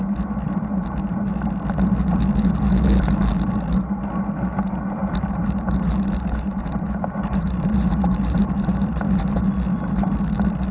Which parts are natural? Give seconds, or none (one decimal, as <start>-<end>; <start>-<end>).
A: 0.0-5.0; 9.4-10.7